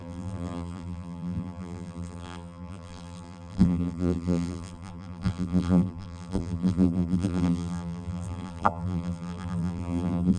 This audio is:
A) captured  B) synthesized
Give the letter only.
B